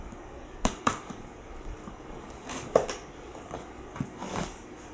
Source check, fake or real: fake